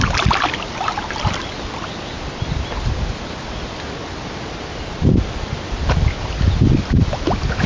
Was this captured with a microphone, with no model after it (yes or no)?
yes